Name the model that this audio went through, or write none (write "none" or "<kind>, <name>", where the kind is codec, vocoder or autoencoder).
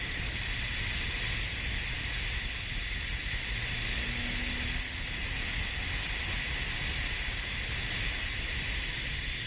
none